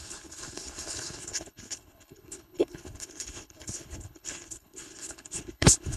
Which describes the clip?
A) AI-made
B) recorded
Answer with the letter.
A